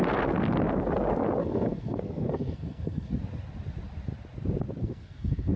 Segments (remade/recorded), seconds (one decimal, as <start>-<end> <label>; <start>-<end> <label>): 0.0-1.4 recorded; 1.4-3.1 remade; 3.1-4.8 recorded; 4.8-5.6 remade